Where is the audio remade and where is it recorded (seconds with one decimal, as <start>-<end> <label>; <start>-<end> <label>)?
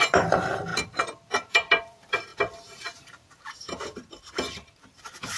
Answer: 0.0-5.4 remade